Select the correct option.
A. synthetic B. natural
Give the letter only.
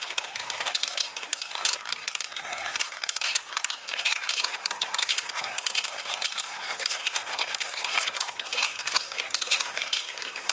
A